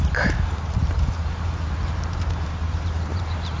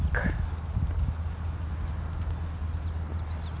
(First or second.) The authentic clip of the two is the second